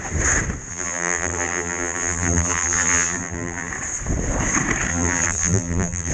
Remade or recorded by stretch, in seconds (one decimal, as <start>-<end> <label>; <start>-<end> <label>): 0.0-0.7 recorded; 0.7-3.7 remade; 3.7-4.9 recorded; 4.9-6.1 remade